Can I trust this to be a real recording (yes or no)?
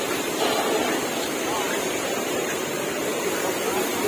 no